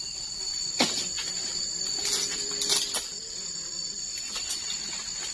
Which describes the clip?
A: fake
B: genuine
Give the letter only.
B